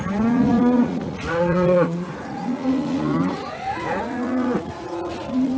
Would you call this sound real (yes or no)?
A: no